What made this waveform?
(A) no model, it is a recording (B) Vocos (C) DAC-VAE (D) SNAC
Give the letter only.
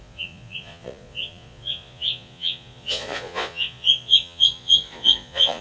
B